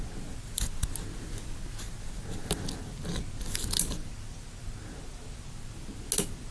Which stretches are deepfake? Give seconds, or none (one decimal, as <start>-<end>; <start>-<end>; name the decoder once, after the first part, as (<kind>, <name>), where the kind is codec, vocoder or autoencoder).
none